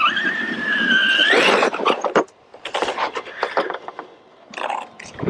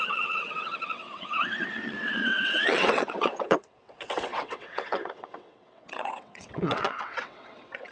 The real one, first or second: first